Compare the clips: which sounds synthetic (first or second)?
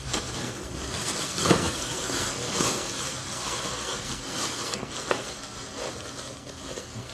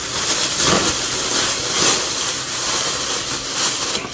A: first